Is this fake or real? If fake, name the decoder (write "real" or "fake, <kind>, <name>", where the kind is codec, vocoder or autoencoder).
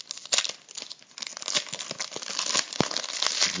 real